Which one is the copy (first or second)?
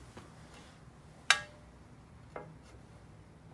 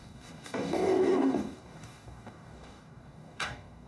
second